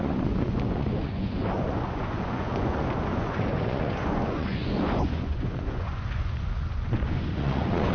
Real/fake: fake